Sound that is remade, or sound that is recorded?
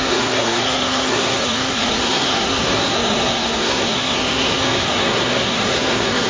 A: remade